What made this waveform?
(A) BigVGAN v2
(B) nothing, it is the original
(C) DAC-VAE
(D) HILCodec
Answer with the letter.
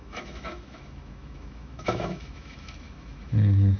C